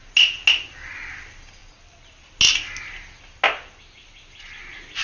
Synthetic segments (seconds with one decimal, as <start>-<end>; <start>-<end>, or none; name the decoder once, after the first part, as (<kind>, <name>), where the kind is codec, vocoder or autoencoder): none